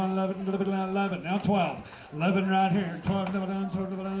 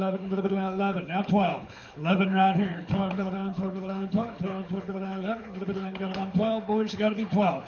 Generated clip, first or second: second